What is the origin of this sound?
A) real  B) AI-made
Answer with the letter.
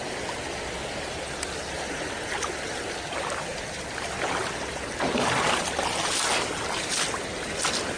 A